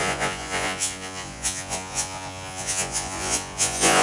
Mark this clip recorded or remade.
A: remade